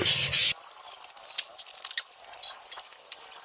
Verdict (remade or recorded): recorded